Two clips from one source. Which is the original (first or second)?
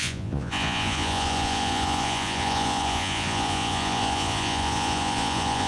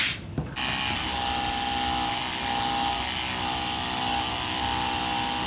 second